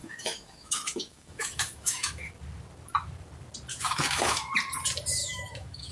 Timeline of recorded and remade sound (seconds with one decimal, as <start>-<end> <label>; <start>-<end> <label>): 0.0-2.3 remade; 2.3-3.7 recorded; 3.7-4.5 remade; 4.5-5.2 recorded; 5.2-5.9 remade